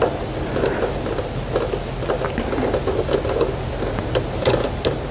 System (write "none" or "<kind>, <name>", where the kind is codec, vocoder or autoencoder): none